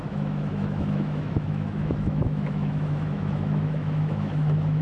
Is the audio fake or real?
fake